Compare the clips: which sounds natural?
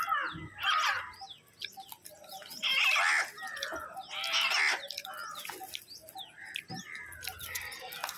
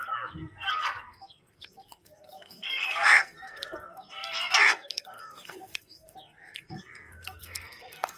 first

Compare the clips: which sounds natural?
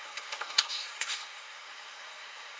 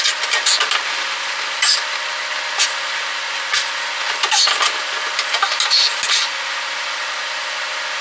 second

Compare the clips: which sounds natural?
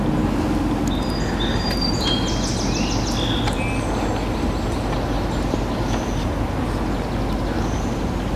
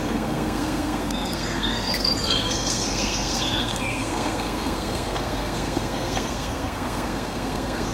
first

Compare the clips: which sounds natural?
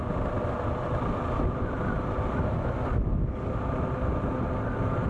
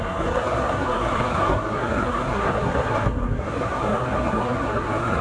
first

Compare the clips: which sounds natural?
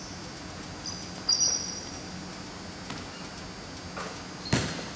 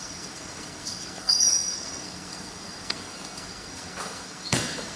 first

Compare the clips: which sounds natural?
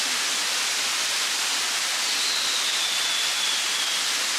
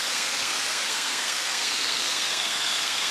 first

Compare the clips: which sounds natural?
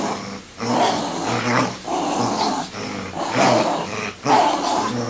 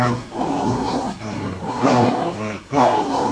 first